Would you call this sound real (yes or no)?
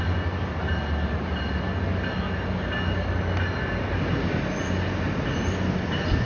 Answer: yes